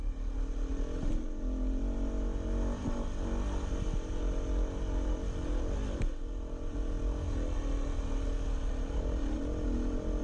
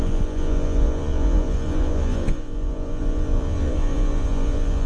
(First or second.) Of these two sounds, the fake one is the second